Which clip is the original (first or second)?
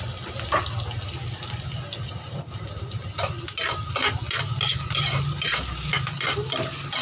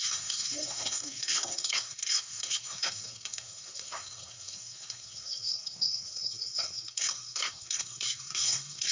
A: first